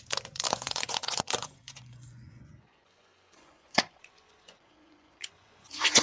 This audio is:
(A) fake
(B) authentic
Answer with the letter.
A